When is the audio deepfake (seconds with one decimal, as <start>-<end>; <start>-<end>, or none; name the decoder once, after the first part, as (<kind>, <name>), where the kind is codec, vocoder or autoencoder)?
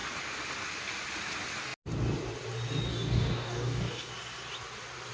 2.9-4.1 (codec, DAC)